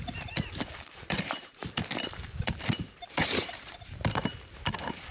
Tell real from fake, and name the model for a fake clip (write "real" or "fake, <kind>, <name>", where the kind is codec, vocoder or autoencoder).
fake, vocoder, BigVGAN v2